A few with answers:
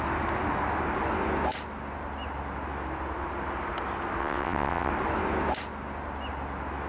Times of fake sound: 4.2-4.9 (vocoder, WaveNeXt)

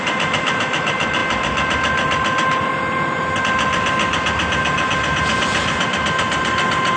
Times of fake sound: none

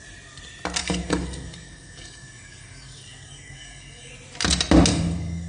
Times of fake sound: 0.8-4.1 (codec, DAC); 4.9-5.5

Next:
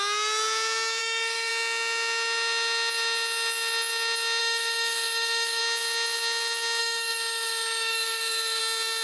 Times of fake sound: 1.0-1.5 (autoencoder, DAC-VAE); 4.4-5.6; 6.8-8.6

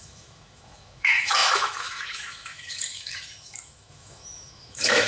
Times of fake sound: 0.0-5.1 (autoencoder, DAC-VAE)